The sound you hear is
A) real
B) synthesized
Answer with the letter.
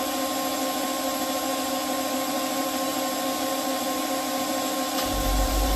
B